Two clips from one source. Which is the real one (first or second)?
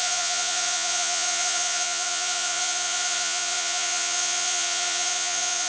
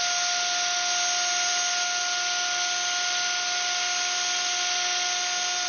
second